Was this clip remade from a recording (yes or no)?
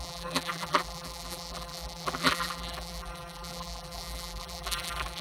yes